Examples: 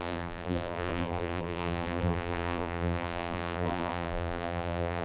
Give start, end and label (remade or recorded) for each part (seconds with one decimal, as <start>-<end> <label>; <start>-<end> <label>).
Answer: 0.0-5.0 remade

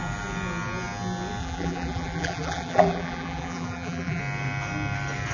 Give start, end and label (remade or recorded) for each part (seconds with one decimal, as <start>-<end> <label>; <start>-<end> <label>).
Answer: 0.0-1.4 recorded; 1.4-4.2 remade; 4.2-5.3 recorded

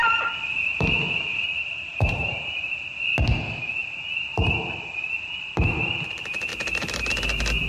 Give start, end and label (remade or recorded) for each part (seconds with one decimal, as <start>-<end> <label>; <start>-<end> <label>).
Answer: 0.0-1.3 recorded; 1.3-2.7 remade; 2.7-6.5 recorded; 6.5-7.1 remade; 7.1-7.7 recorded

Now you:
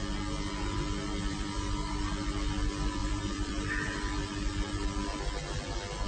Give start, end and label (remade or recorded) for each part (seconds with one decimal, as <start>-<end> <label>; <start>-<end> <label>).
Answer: 0.0-1.3 recorded; 1.3-2.0 remade; 2.0-3.0 recorded; 3.0-3.5 remade; 3.5-6.1 recorded